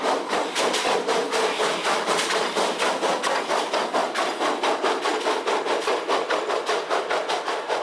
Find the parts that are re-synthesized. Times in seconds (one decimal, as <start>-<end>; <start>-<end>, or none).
none